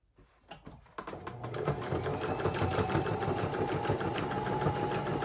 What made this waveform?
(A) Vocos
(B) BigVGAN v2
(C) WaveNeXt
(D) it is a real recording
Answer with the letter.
D